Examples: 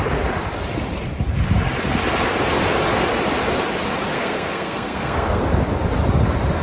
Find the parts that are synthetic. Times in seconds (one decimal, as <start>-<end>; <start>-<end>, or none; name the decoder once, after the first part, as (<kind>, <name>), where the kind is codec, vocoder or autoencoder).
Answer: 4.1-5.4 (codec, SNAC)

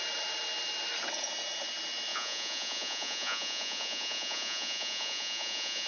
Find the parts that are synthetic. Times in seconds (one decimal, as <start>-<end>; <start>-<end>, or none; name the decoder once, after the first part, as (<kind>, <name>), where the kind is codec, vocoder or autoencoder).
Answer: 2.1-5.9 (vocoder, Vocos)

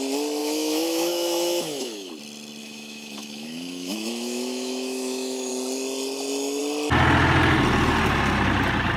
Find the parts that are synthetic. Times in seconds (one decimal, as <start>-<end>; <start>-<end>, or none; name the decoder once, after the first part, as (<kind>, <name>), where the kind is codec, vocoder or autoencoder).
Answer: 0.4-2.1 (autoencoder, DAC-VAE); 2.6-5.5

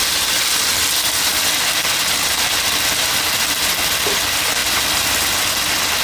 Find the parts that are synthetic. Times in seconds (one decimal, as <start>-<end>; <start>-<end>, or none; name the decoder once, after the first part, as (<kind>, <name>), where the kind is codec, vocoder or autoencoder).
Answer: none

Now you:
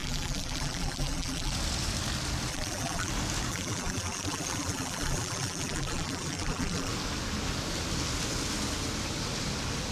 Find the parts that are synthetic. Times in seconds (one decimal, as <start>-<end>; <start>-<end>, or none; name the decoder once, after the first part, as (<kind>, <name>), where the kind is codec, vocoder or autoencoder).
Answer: 0.0-1.5 (vocoder, BigVGAN v2); 2.5-3.1; 3.5-6.9

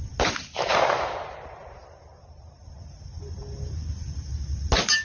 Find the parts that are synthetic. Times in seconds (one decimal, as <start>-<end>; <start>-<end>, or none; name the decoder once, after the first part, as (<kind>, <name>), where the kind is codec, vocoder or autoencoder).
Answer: 0.7-3.7 (vocoder, BigVGAN v2)

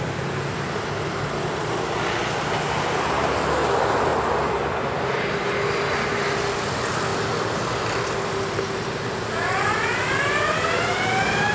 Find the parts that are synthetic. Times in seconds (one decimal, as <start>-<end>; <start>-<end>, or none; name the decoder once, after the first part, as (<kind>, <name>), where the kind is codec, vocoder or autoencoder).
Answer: none